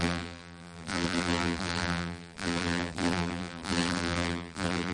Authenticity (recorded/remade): remade